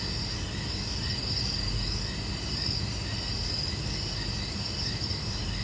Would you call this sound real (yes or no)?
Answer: yes